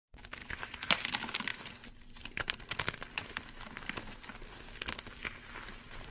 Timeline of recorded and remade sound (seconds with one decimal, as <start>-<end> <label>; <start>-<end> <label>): 0.0-0.4 recorded; 0.4-1.1 remade; 1.1-6.1 recorded